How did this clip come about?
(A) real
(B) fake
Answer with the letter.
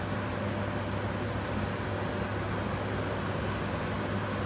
A